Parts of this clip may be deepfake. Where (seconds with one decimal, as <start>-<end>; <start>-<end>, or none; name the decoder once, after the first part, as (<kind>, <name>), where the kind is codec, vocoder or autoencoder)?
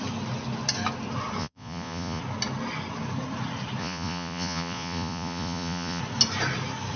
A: 1.4-2.2 (vocoder, Vocos); 3.8-6.0